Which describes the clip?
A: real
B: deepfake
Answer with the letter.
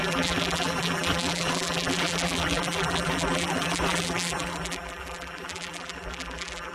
B